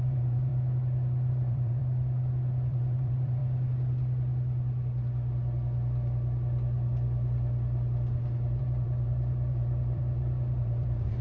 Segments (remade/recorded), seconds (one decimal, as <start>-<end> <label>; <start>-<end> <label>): 0.0-0.5 remade; 0.5-1.3 recorded; 1.3-1.8 remade; 1.8-2.7 recorded; 2.7-3.4 remade; 3.4-8.6 recorded; 8.6-11.2 remade